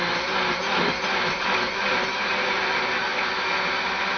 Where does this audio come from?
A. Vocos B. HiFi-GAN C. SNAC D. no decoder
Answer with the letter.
D